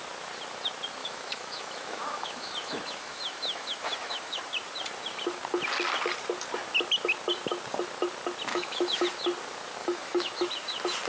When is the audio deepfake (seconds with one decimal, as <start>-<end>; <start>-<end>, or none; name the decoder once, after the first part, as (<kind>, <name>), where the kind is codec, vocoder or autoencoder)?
1.0-4.4 (autoencoder, DAC-VAE); 8.5-9.0; 9.8-10.5